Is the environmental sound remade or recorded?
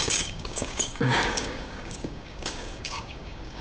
remade